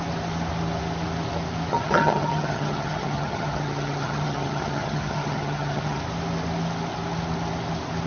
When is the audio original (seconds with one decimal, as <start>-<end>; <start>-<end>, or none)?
0.0-1.7; 6.0-8.1